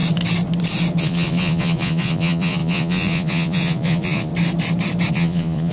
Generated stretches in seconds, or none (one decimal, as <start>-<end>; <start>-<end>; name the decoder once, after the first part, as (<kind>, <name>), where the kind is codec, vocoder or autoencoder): 1.0-4.3 (vocoder, Vocos); 5.1-5.7